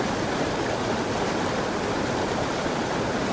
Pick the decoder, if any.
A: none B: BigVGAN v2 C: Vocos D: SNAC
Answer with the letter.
A